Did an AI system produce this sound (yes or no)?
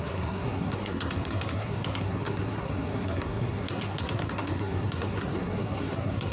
yes